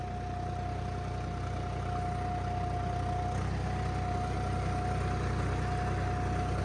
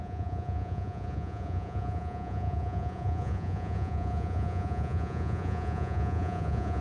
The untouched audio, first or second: first